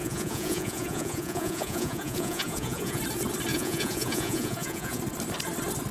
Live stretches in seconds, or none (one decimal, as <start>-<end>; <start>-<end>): 3.0-3.5; 5.0-5.9